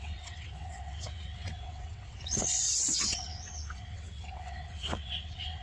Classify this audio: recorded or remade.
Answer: remade